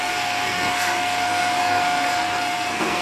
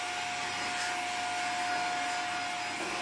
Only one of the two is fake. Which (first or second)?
first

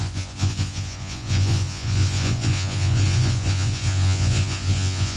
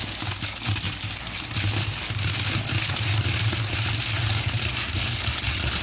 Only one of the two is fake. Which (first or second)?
first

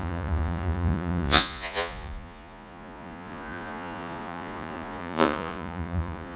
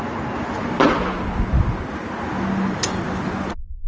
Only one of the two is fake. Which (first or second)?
first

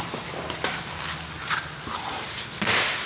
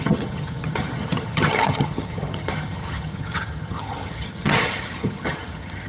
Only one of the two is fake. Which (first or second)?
second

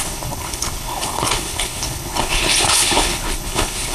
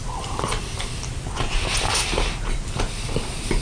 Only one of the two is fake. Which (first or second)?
first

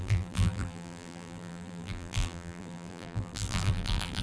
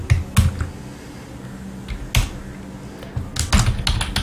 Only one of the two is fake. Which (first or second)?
first